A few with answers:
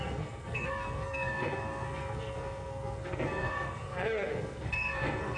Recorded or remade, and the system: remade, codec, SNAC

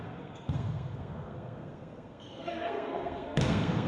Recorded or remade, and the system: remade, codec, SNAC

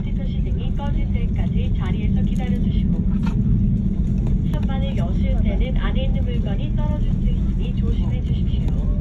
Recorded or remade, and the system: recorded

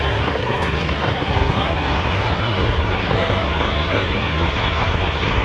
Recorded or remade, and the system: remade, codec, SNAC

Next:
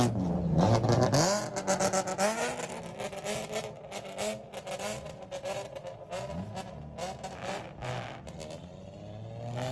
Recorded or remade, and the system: recorded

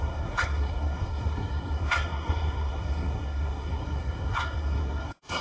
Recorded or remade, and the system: remade, codec, SNAC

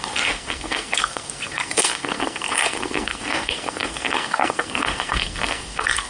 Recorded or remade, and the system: remade, codec, SNAC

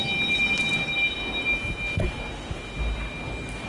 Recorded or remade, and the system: recorded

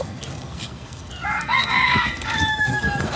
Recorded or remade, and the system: remade, codec, SNAC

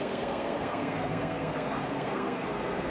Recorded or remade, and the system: remade, codec, SNAC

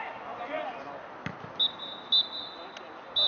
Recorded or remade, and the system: recorded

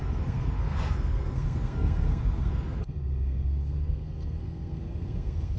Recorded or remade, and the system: remade, codec, SNAC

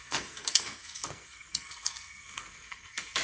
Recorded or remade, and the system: remade, codec, SNAC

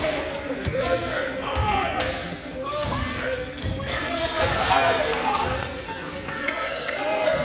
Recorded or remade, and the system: remade, codec, SNAC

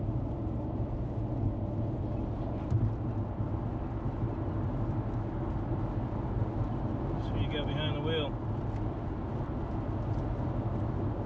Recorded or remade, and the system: recorded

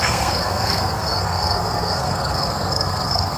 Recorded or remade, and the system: remade, codec, SNAC